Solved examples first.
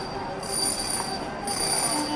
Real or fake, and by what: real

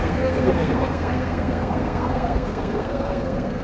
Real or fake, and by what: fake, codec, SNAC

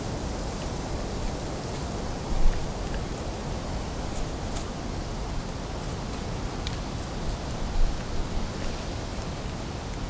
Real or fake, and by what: real